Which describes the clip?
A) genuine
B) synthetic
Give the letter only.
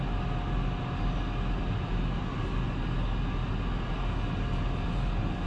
A